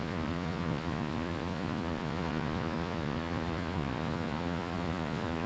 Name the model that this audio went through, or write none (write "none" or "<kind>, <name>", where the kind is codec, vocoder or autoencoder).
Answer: vocoder, Vocos